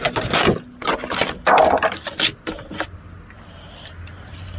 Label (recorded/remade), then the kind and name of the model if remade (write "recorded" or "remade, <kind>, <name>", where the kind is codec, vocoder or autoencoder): recorded